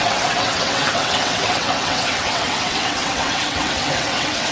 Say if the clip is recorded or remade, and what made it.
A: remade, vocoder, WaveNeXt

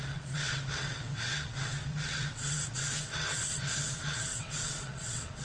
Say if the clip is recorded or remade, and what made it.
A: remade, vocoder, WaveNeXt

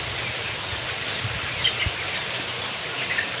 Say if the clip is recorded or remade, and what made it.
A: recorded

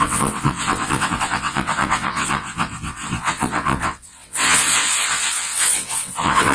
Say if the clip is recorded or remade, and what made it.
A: remade, vocoder, WaveNeXt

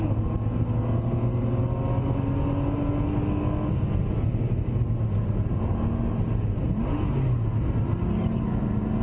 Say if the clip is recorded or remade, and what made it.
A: recorded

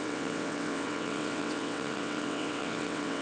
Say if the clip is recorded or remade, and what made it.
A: remade, vocoder, WaveNeXt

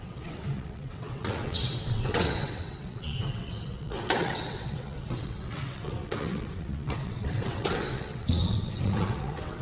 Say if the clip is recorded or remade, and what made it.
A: remade, vocoder, WaveNeXt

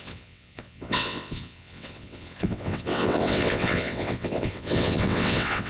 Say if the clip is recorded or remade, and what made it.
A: remade, vocoder, WaveNeXt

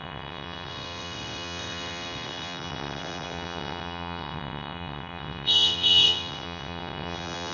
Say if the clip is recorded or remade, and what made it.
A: remade, vocoder, WaveNeXt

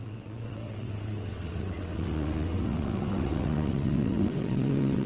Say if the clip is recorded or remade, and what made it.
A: remade, vocoder, WaveNeXt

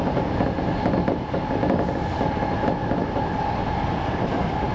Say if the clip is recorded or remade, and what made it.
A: recorded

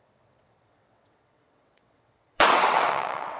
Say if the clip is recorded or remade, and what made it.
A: remade, vocoder, WaveNeXt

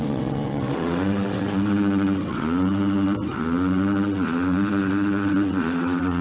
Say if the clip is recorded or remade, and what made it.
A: remade, vocoder, WaveNeXt